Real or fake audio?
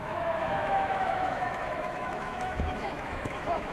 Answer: fake